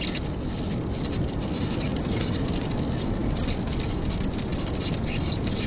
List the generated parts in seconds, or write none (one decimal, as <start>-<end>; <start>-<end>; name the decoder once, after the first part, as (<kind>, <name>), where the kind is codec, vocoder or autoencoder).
none